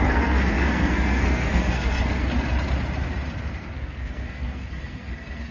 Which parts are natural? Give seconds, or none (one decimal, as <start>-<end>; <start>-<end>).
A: 2.3-3.5